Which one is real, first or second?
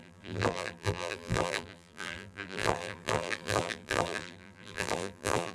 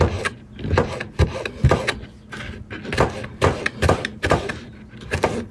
second